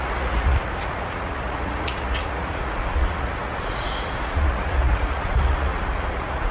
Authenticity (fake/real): fake